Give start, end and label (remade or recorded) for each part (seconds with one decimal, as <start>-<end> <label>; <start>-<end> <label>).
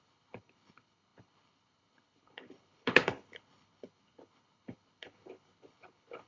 0.0-6.3 remade